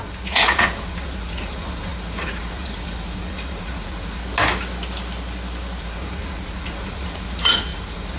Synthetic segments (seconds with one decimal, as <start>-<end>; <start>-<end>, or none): 0.0-4.2; 5.8-8.2